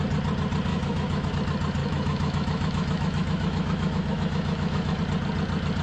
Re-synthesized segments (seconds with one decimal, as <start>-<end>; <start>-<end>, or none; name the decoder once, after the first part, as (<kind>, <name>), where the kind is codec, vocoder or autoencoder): 0.7-1.3 (autoencoder, DAC-VAE); 1.8-5.0